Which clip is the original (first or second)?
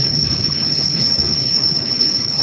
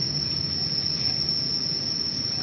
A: second